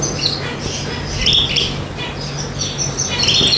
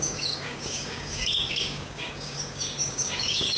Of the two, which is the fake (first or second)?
second